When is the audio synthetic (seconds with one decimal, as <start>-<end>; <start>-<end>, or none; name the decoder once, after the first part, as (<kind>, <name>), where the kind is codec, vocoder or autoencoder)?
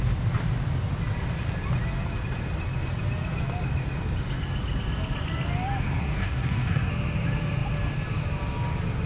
6.0-6.9 (codec, SNAC)